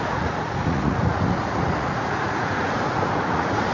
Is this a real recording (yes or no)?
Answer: no